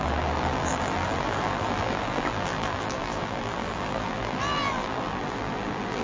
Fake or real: fake